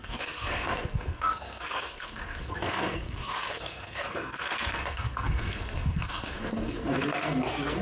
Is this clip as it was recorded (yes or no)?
no